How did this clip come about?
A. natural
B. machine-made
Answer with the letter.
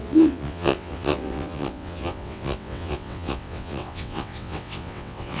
B